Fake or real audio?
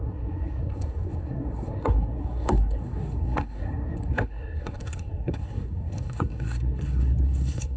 fake